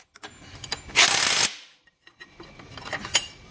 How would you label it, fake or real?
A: real